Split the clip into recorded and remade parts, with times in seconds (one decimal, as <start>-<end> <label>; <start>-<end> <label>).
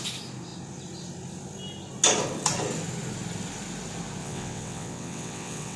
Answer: 0.0-4.2 recorded; 4.2-5.8 remade